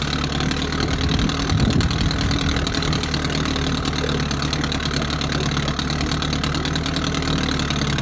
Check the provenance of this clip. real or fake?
real